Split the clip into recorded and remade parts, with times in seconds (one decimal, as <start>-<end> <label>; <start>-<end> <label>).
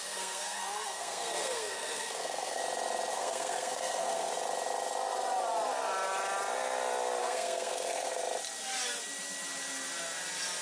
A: 0.0-2.6 remade; 2.6-3.1 recorded; 3.1-4.3 remade; 4.3-7.2 recorded; 7.2-8.2 remade; 8.2-10.6 recorded